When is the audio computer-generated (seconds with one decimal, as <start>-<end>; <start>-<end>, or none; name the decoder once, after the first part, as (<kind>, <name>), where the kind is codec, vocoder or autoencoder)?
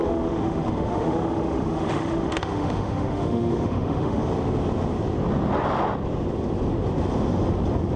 0.0-4.2 (autoencoder, DAC-VAE)